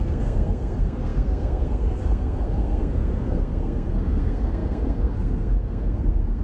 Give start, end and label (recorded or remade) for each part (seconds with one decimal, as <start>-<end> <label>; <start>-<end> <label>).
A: 0.0-6.4 remade